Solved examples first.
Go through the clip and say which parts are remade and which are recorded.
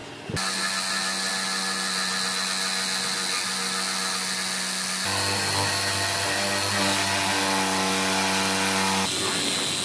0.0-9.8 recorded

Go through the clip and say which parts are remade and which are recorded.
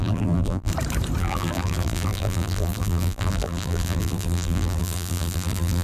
0.0-0.7 remade; 0.7-1.2 recorded; 1.2-5.8 remade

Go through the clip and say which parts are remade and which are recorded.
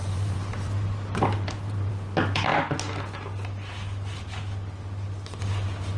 0.0-1.9 remade; 1.9-6.0 recorded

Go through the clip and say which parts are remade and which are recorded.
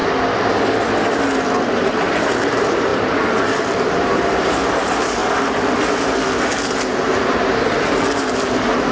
0.0-2.1 recorded; 2.1-5.2 remade; 5.2-6.7 recorded; 6.7-8.9 remade